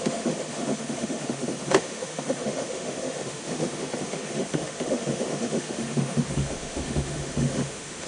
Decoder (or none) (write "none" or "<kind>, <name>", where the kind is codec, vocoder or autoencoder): autoencoder, DAC-VAE